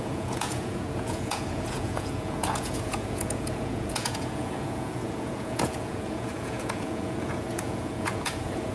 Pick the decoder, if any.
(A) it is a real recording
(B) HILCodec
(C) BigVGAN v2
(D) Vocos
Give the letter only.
D